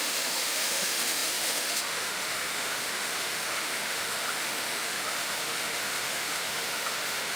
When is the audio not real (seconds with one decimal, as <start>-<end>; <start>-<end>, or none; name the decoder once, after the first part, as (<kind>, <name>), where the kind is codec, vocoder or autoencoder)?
0.0-7.4 (autoencoder, DAC-VAE)